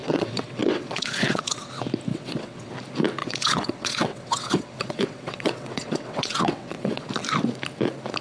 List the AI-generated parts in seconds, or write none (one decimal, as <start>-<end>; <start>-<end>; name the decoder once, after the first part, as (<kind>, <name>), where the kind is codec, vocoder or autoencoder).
0.0-1.7 (vocoder, WaveNeXt); 2.1-2.7; 3.2-7.1